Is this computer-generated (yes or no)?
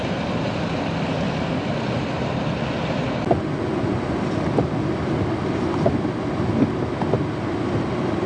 no